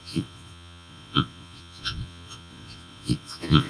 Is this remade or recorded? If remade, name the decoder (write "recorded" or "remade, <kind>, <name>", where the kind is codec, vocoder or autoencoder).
remade, vocoder, Vocos